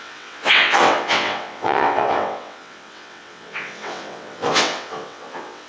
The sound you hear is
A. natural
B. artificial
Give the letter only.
B